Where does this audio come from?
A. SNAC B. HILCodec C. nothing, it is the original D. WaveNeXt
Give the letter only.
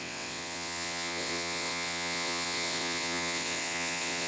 D